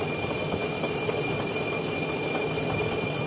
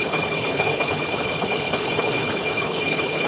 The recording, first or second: first